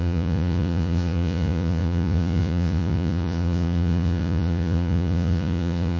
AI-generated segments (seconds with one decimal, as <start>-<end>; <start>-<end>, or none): 0.0-6.0